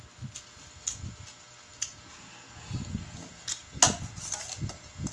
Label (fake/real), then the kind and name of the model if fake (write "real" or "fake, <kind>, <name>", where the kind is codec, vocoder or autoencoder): real